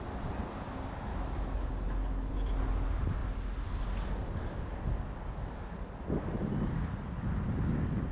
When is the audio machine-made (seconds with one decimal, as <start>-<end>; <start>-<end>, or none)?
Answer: 1.1-1.7